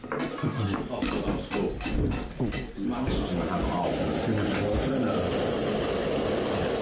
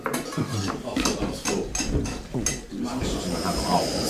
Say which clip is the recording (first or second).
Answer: first